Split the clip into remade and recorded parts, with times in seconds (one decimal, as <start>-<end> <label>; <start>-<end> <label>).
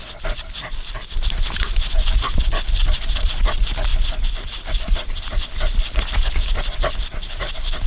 0.0-7.9 recorded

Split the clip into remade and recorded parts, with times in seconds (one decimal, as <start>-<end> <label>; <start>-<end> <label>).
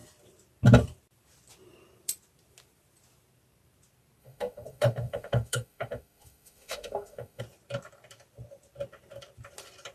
0.0-4.2 recorded; 4.2-7.4 remade; 7.4-9.9 recorded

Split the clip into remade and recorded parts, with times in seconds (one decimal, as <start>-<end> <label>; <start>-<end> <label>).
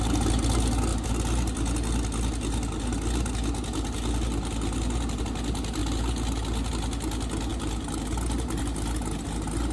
0.0-9.7 recorded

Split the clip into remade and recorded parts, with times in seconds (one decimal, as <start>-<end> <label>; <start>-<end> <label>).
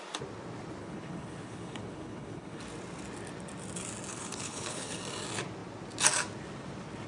0.0-0.8 recorded; 0.8-2.6 remade; 2.6-4.1 recorded; 4.1-5.0 remade; 5.0-7.1 recorded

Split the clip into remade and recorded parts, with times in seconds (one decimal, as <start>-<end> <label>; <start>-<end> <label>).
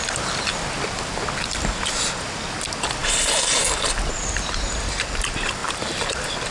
0.0-6.5 recorded